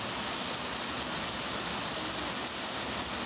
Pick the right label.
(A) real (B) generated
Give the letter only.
A